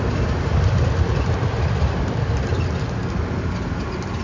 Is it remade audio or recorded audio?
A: recorded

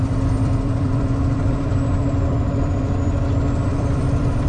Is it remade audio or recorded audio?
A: remade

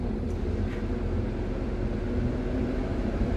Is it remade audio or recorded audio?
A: recorded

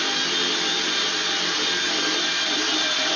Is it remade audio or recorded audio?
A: remade